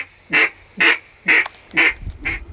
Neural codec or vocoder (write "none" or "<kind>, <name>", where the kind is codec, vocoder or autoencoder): none